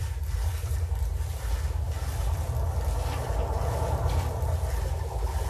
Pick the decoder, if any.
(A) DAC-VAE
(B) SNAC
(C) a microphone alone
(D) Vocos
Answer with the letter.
C